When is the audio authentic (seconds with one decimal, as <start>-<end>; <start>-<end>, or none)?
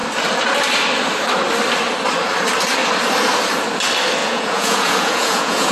0.0-4.2